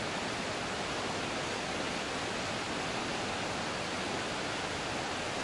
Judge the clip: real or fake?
real